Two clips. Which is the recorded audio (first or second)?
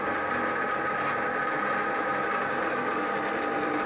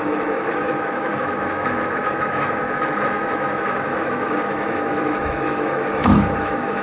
first